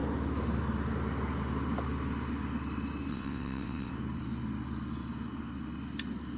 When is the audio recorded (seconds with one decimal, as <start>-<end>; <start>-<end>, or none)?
0.0-3.1; 3.9-6.4

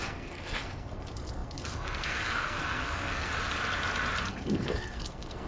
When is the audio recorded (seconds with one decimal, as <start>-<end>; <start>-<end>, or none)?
3.3-4.3